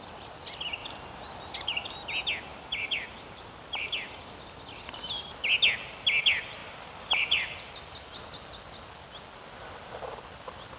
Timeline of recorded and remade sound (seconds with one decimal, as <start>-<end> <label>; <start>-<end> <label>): 0.0-0.8 recorded; 0.8-1.7 remade; 1.7-2.5 recorded; 2.5-3.9 remade; 3.9-6.6 recorded; 6.6-7.6 remade; 7.6-10.8 recorded

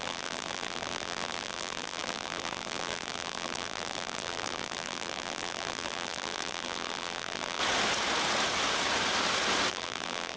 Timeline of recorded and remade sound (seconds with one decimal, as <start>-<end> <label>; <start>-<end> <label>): 0.0-7.6 remade; 7.6-9.7 recorded; 9.7-10.4 remade

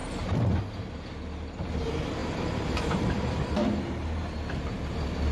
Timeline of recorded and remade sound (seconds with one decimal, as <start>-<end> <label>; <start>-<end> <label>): 0.0-0.6 remade; 0.6-2.2 recorded; 2.2-4.8 remade; 4.8-5.3 recorded

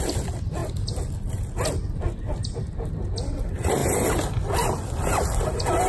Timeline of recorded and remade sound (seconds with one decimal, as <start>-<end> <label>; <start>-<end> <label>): 0.0-5.9 recorded

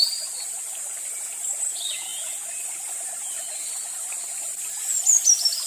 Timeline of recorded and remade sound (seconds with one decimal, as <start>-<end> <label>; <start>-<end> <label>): 0.0-5.7 recorded

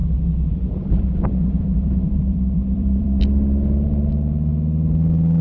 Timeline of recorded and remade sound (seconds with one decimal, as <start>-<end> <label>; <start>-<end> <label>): 0.0-3.2 remade; 3.2-5.4 recorded